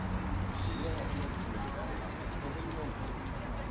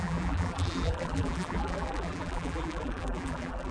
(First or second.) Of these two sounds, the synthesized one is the second